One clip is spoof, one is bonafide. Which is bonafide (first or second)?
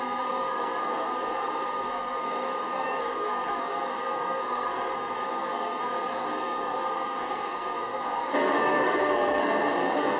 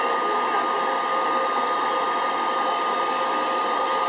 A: second